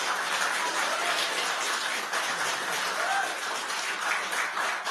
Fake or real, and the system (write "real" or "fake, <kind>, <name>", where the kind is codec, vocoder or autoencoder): real